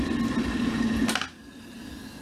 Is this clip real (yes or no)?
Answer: yes